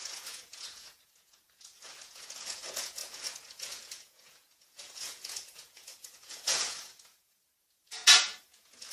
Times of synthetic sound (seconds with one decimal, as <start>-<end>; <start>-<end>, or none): 0.0-8.9

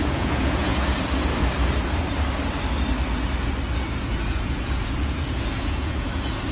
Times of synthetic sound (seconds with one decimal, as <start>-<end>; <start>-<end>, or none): 0.0-0.7; 4.0-6.5

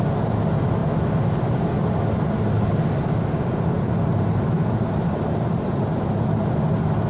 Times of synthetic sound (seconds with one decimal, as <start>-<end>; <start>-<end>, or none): 4.1-6.4